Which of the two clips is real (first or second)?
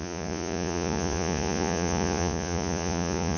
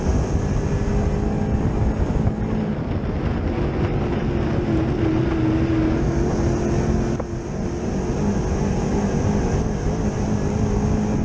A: second